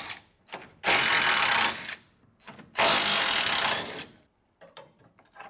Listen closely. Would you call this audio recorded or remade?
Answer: recorded